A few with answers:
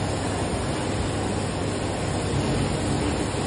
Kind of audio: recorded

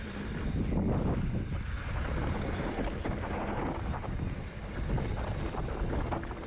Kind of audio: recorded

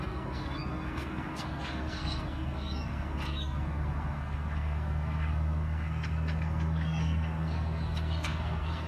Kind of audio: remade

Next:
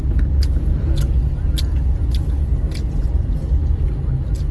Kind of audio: recorded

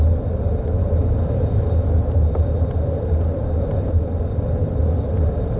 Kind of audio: recorded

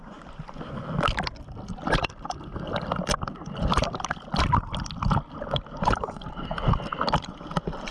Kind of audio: recorded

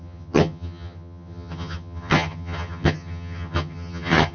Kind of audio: remade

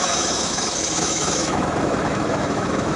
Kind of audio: remade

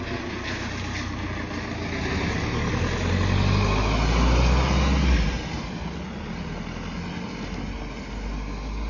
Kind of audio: recorded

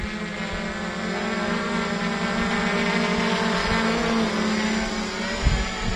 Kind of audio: recorded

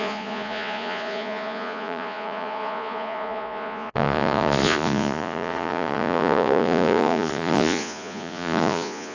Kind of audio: remade